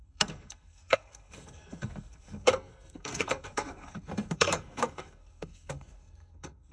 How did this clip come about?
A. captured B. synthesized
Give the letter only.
B